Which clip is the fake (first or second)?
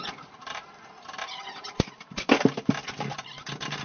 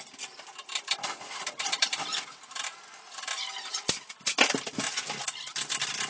first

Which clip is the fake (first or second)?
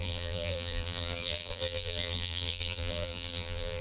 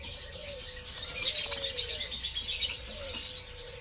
first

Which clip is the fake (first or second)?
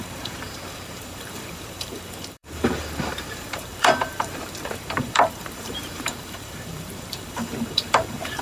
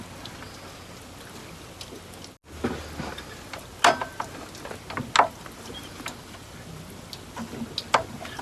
first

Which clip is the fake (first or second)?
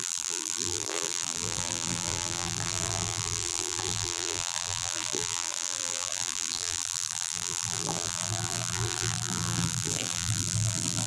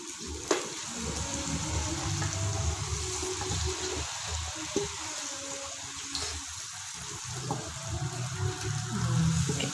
first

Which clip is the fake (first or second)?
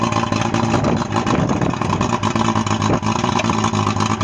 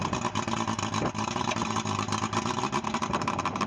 second